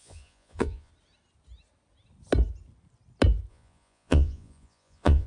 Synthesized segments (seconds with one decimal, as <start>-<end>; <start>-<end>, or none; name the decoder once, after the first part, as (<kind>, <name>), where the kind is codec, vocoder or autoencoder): 0.0-0.9 (vocoder, Vocos); 3.5-5.3